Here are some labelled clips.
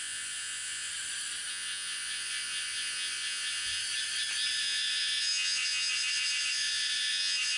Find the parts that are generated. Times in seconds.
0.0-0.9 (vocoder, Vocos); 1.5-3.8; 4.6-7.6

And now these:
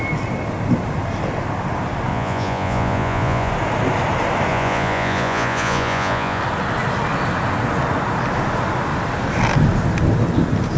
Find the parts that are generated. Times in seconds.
2.1-3.5 (vocoder, Vocos); 4.5-6.4